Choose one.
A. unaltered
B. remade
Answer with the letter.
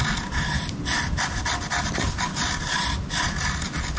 A